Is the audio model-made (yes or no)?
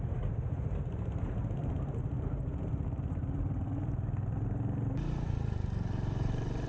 yes